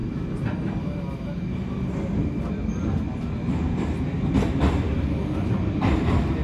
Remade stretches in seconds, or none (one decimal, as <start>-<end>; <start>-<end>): none